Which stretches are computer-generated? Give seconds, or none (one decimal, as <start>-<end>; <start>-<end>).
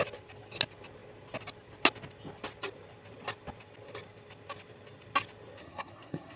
5.6-6.4